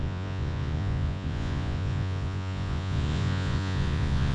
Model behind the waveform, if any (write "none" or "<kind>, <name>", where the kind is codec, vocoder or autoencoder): vocoder, Vocos